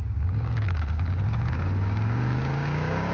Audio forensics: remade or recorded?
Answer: remade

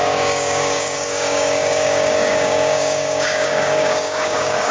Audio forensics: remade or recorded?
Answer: remade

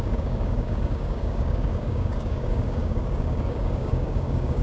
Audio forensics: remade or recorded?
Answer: remade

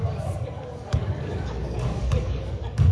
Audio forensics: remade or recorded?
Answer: remade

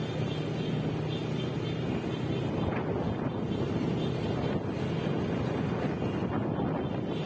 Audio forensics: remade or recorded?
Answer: recorded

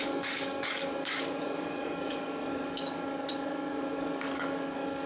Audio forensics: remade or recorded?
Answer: remade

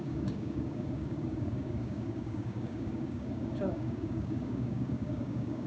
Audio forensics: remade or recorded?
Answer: remade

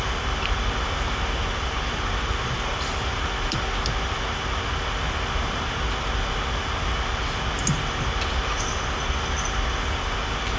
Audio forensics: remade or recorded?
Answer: recorded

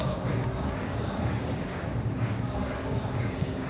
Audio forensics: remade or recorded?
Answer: remade